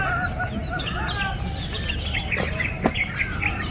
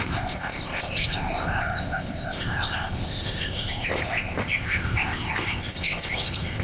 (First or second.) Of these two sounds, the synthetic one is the second